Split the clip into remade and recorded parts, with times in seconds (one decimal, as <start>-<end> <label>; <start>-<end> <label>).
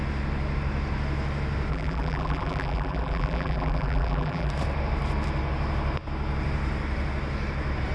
0.0-1.7 recorded; 1.7-4.5 remade; 4.5-7.9 recorded